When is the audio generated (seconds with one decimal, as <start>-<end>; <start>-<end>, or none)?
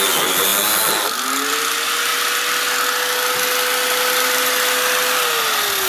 none